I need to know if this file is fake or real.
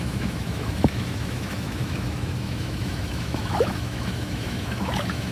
fake